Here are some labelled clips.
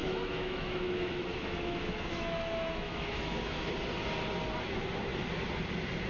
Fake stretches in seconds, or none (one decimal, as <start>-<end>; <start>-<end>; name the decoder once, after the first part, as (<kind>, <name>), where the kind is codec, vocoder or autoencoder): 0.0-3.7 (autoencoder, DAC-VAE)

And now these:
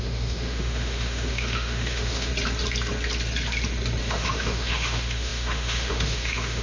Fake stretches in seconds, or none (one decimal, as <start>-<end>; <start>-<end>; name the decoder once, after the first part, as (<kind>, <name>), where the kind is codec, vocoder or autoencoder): 0.0-2.3 (autoencoder, DAC-VAE); 4.0-6.6

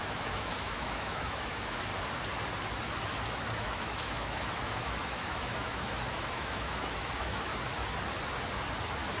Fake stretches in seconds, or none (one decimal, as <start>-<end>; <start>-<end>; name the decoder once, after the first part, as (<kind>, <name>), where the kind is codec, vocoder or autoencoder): 0.0-1.9 (autoencoder, DAC-VAE); 3.3-7.5

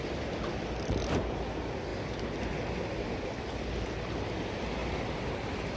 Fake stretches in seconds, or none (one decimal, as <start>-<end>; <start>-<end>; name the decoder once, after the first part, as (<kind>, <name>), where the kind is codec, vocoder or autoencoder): none

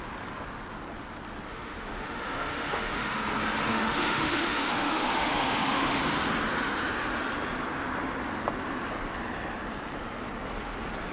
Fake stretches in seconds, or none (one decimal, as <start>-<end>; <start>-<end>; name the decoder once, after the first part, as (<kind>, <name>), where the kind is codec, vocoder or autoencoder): 1.5-3.2 (autoencoder, DAC-VAE); 3.7-6.0

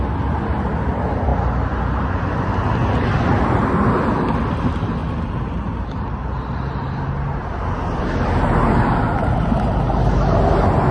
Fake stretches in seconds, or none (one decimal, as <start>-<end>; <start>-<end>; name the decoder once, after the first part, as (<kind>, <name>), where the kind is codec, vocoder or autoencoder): none